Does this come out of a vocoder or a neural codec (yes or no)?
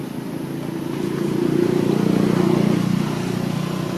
no